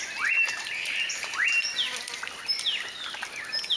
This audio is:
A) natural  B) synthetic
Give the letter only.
A